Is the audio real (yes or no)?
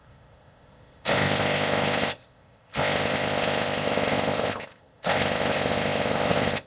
no